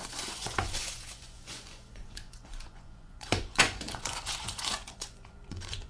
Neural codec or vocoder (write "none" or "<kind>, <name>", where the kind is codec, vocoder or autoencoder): vocoder, Vocos